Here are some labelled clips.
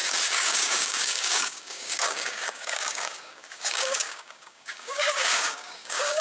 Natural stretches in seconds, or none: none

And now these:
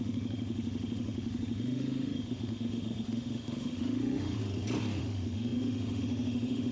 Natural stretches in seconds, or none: 4.4-5.0

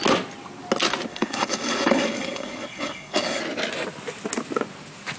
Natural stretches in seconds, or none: 0.0-1.1; 3.4-5.2

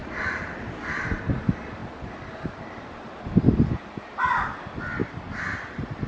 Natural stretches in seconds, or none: 0.0-6.1

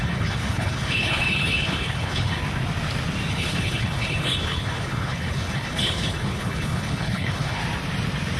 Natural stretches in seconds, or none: 2.4-3.3; 7.6-8.4